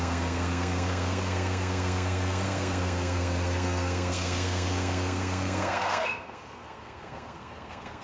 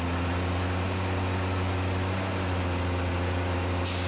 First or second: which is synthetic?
first